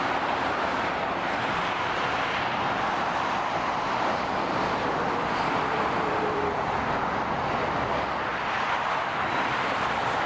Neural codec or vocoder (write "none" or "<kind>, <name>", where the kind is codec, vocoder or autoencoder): vocoder, BigVGAN v2